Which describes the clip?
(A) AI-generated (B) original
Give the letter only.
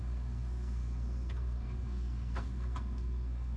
A